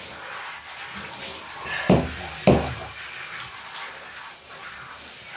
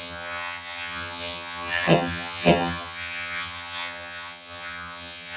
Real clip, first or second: first